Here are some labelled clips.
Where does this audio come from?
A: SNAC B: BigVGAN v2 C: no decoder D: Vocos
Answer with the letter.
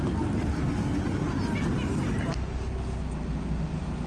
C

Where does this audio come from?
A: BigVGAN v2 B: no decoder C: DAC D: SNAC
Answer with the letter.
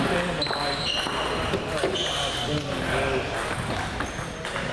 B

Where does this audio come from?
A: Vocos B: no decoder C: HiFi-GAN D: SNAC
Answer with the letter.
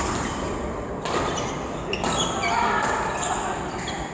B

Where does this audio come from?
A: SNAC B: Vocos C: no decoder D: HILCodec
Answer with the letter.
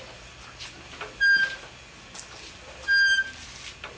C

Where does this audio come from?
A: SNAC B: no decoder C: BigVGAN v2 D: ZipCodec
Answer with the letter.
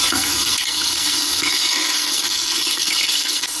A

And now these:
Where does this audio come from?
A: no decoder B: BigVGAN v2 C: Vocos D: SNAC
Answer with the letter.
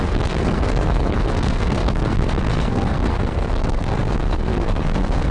D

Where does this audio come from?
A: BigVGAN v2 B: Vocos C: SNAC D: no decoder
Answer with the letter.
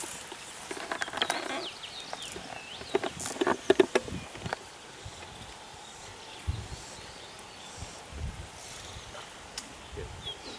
D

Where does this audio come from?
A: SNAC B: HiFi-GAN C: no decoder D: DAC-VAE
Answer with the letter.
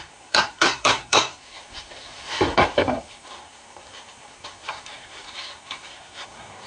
A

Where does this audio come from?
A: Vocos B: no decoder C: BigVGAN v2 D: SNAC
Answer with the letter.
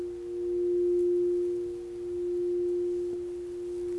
B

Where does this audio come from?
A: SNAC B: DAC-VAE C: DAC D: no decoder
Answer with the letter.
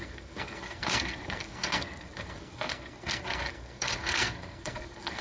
A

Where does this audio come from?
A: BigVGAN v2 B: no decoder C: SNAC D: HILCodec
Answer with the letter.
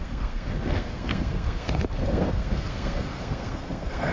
C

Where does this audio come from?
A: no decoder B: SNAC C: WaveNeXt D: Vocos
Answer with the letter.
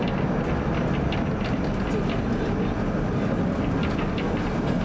A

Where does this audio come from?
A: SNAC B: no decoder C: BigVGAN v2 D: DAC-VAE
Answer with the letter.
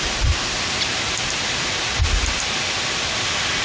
B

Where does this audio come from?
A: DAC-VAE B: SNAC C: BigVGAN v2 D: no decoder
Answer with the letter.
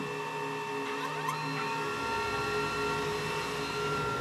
D